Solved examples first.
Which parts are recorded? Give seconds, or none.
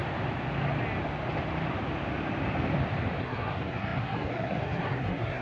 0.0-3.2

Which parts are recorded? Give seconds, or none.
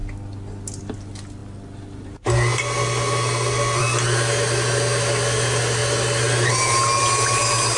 0.0-7.8